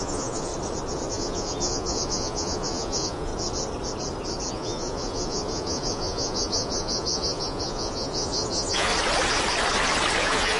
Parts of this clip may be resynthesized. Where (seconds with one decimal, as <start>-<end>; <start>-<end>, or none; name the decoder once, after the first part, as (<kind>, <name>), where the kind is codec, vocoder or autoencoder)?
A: 0.0-0.5 (vocoder, Vocos); 1.1-3.3; 4.5-8.9; 10.2-10.6